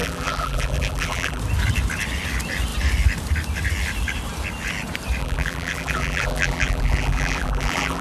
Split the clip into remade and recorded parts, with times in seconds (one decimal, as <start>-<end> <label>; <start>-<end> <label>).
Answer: 0.0-1.4 remade; 1.4-5.2 recorded; 5.2-8.0 remade